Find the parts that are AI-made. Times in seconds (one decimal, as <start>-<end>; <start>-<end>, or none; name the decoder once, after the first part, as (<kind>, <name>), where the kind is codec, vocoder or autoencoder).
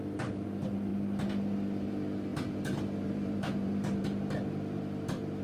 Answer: 2.3-4.0 (vocoder, BigVGAN v2)